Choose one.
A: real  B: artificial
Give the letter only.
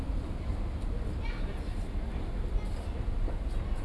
A